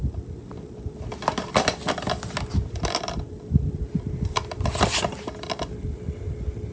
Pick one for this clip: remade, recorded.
recorded